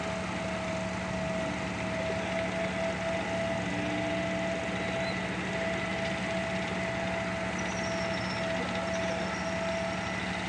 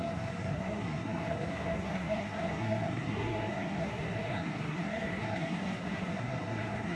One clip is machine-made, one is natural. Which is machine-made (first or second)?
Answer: second